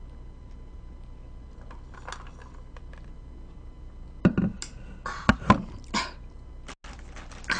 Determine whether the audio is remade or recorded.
recorded